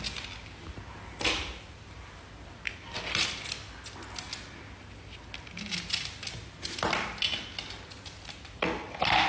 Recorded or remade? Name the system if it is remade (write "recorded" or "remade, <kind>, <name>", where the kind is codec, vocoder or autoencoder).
recorded